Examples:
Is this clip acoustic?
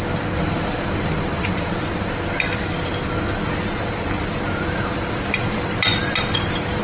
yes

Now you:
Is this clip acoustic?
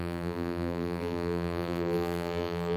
no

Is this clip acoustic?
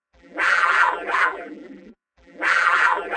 no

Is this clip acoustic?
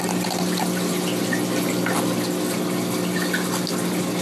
yes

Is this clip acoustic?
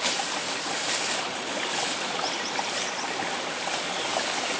yes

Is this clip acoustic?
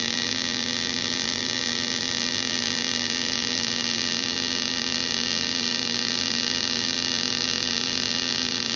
no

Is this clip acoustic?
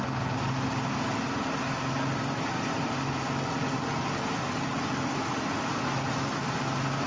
yes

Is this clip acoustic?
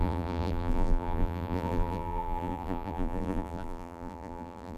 no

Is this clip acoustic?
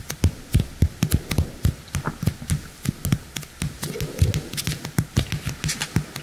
yes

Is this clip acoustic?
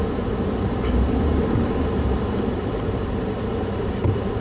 no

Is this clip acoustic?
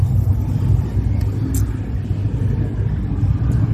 yes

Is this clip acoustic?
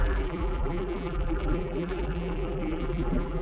no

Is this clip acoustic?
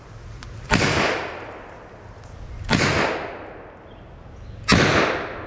yes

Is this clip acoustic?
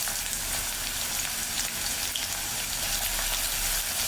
yes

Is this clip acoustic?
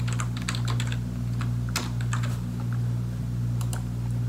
yes